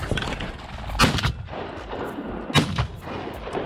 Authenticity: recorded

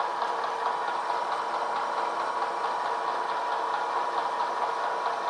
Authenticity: recorded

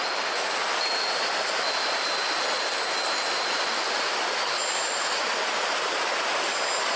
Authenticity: recorded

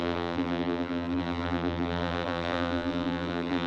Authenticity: remade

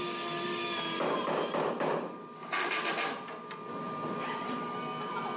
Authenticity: recorded